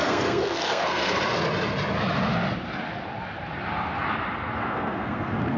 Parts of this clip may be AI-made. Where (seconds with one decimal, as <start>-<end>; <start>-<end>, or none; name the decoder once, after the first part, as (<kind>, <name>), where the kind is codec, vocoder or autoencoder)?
0.0-1.2 (codec, SNAC); 4.6-5.6